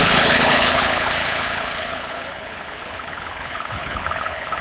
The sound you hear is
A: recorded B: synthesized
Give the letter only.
B